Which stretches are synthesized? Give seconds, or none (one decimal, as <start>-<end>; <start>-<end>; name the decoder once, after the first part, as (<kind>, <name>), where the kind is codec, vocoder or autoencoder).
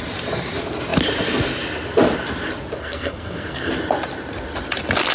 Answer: 2.8-3.7 (codec, SNAC)